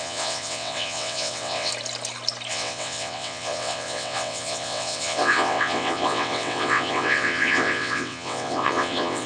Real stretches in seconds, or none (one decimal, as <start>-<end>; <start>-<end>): 1.7-2.5